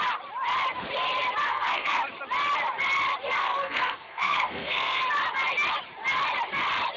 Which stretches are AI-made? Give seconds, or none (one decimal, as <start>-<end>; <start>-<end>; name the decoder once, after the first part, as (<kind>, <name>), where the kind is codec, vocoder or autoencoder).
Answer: 1.5-2.0 (codec, SNAC); 3.4-5.0